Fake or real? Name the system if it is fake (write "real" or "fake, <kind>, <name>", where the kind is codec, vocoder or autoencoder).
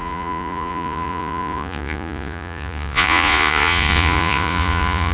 fake, vocoder, Vocos